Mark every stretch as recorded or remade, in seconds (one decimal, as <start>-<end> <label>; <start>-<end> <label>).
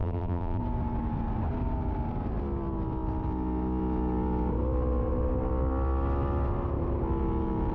0.0-0.6 remade; 0.6-7.7 recorded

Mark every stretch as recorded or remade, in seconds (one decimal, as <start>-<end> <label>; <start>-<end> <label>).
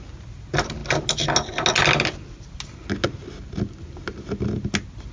0.0-5.1 recorded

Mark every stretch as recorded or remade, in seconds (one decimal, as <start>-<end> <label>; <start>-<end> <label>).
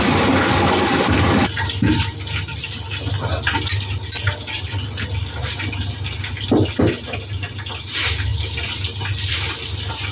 0.0-10.1 recorded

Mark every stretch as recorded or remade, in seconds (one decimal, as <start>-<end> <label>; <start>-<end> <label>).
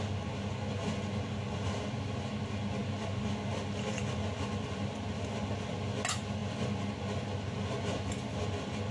0.0-8.9 recorded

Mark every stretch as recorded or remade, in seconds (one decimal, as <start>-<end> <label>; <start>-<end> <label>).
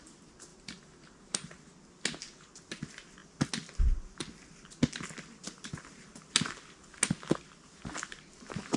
0.0-0.5 recorded; 0.5-1.5 remade; 1.5-8.8 recorded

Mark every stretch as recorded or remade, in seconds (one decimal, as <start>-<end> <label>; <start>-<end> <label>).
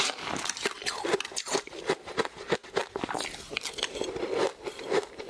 0.0-5.3 recorded